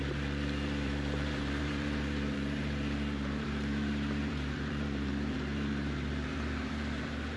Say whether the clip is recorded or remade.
remade